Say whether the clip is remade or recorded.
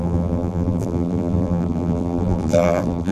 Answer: remade